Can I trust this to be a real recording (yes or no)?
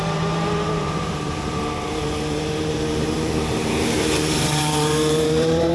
no